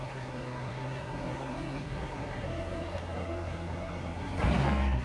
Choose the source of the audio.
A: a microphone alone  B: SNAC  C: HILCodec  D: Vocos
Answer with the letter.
B